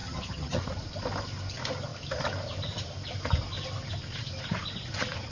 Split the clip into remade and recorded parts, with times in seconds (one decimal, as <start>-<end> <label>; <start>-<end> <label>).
0.0-0.6 remade; 0.6-5.3 recorded